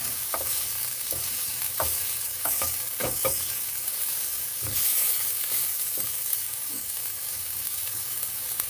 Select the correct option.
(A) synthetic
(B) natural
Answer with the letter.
A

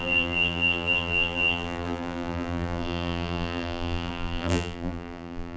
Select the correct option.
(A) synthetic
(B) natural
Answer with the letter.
A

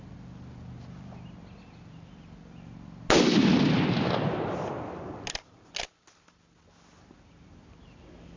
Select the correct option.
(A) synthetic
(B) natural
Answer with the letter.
B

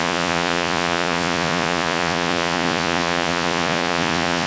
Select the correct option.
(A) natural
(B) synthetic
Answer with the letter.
B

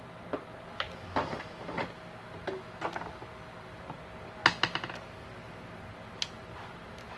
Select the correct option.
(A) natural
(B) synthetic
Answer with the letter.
A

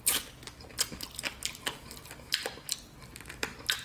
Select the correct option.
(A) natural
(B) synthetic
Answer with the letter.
A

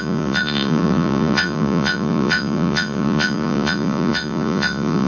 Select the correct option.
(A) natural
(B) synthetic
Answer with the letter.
B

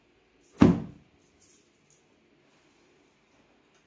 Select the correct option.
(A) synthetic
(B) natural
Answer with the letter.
B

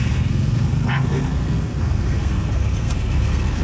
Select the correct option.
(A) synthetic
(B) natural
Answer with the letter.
A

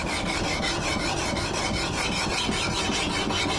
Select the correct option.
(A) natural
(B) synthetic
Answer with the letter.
A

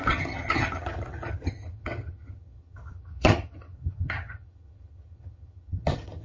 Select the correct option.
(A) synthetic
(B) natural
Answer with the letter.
A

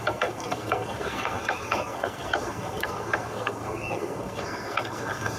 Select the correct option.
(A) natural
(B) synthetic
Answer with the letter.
B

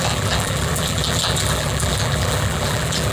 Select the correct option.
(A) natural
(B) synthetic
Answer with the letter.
B